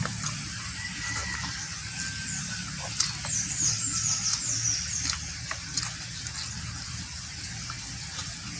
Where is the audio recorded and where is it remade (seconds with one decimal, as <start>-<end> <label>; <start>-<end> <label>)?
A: 0.0-8.6 recorded